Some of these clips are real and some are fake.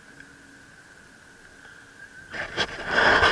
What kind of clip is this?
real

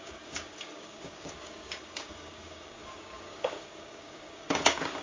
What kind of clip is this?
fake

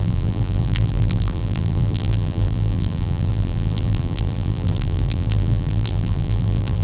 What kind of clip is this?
fake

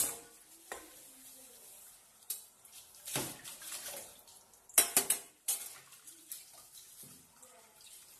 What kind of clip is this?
real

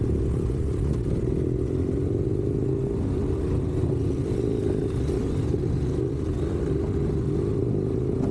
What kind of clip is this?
real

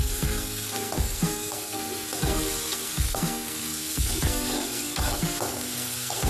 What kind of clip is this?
fake